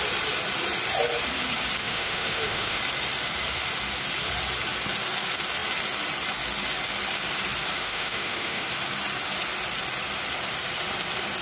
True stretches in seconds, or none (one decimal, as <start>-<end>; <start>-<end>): 0.0-1.8; 2.8-7.8; 8.7-11.4

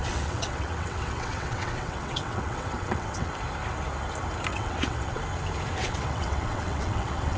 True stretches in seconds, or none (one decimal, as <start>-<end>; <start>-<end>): 3.3-4.5; 5.2-5.8

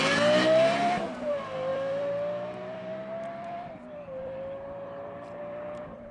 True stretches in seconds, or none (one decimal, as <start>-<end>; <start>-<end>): none

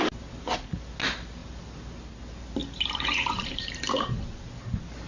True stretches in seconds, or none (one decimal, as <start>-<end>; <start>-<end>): 0.0-2.6; 4.1-5.1

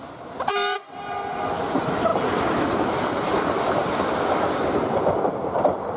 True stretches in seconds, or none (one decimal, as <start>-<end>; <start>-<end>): 0.0-0.5; 1.5-2.1; 5.2-6.0